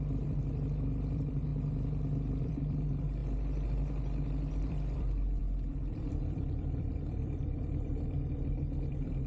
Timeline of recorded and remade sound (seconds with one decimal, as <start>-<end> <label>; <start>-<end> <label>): 0.0-1.5 remade; 1.5-2.4 recorded; 2.4-3.2 remade; 3.2-4.5 recorded; 4.5-9.3 remade

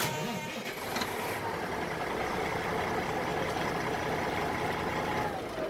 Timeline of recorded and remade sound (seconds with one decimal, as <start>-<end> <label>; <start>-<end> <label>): 0.0-5.7 recorded

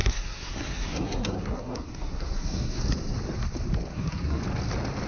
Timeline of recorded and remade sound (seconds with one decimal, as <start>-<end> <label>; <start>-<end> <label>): 0.0-2.8 remade; 2.8-3.9 recorded; 3.9-4.4 remade; 4.4-5.1 recorded

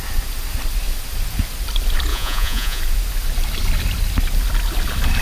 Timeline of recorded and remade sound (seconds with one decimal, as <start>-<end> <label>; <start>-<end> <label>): 0.0-2.1 recorded; 2.1-2.8 remade; 2.8-5.2 recorded

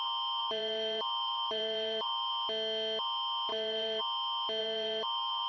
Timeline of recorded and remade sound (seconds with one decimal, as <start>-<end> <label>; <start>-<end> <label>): 0.0-0.4 recorded; 0.4-2.3 remade; 2.3-3.5 recorded; 3.5-4.0 remade; 4.0-4.6 recorded; 4.6-5.5 remade

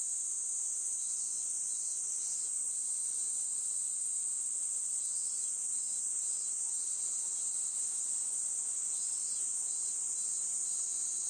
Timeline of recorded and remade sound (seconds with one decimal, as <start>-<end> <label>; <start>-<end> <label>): 0.0-11.3 recorded